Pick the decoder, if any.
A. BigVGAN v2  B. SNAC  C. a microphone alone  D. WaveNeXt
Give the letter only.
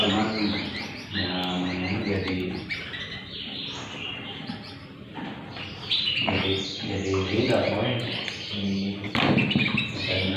C